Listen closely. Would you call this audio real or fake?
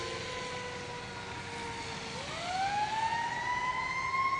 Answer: real